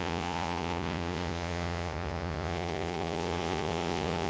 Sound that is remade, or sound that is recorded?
remade